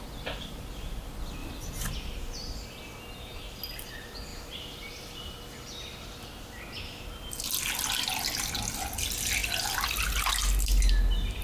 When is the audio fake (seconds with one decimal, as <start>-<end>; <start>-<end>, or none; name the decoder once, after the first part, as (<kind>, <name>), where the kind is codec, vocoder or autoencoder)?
1.4-1.9 (vocoder, BigVGAN v2); 4.3-5.1